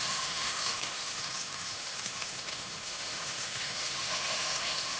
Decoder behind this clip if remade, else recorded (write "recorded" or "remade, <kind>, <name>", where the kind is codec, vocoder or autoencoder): remade, autoencoder, DAC-VAE